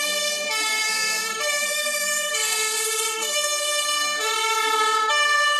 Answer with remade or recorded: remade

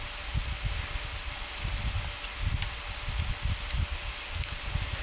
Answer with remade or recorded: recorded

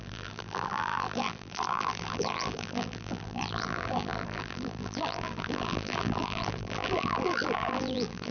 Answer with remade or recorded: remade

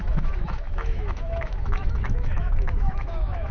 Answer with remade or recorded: remade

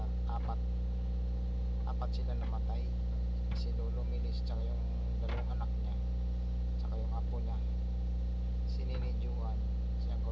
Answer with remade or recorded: recorded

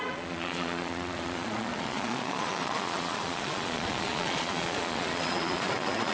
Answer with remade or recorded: remade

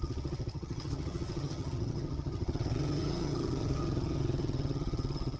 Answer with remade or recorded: remade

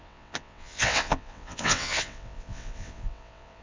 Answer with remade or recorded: remade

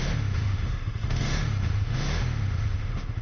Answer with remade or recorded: remade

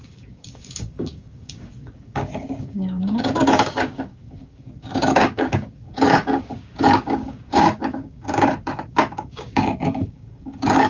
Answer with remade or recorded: remade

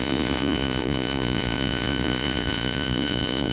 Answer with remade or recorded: remade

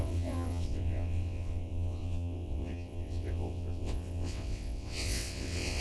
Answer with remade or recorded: remade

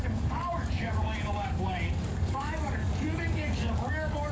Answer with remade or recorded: remade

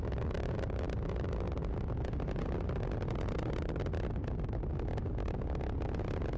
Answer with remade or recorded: recorded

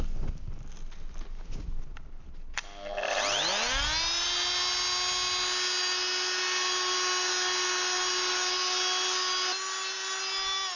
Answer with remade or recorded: recorded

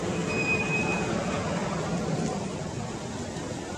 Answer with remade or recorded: recorded